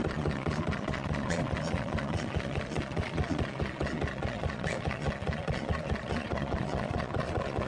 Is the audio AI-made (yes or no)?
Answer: yes